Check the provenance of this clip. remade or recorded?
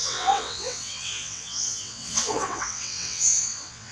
remade